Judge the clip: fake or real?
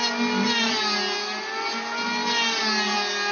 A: real